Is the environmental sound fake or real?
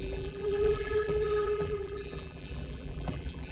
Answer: fake